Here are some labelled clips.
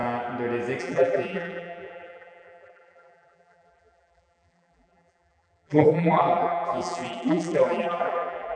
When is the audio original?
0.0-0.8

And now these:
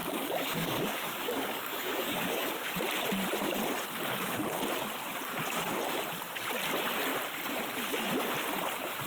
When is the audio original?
2.8-9.1

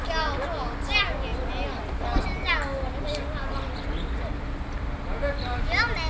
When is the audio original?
0.0-6.1

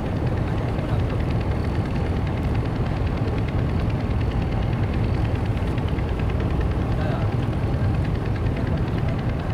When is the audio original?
0.0-1.6; 2.4-5.5; 7.0-9.5

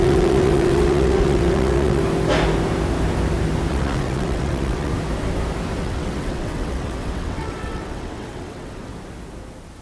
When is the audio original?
2.0-3.7; 4.9-5.8; 8.9-9.8

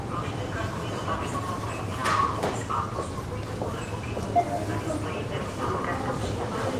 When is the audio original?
0.0-6.8

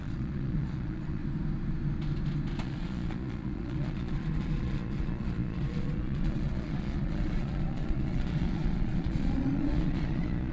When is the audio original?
1.2-2.6

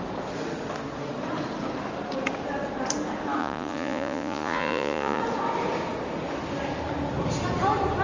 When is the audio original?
0.0-3.4; 5.2-8.0